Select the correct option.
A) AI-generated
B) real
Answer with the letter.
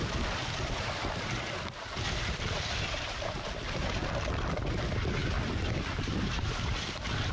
B